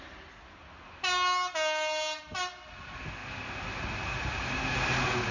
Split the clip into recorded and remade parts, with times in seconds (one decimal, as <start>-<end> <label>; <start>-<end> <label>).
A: 0.0-5.3 recorded